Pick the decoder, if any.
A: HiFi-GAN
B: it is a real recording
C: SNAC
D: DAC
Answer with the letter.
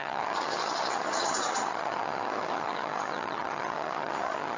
A